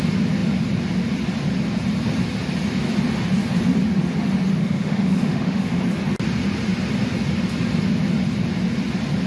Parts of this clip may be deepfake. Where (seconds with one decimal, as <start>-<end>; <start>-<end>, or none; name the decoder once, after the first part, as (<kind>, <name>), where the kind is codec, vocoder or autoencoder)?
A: 4.6-5.8 (autoencoder, DAC-VAE)